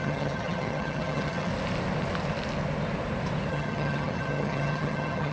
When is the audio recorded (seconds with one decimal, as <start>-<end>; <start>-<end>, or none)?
1.5-3.5